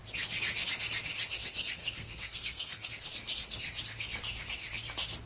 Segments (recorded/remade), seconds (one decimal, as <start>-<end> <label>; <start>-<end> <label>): 0.0-1.8 recorded; 1.8-2.9 remade; 2.9-5.3 recorded